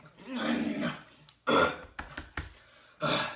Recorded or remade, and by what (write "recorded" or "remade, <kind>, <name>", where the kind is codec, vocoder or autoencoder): recorded